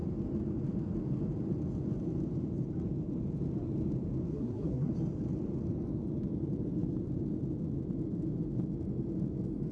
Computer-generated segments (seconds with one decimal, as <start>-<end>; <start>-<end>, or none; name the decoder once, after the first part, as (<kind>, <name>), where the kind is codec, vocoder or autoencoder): 4.3-4.9 (codec, SNAC)